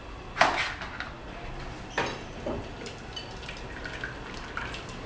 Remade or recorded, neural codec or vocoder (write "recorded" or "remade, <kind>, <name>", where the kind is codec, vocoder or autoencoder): recorded